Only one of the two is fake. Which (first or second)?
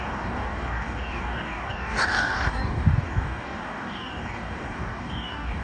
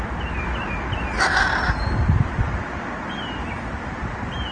first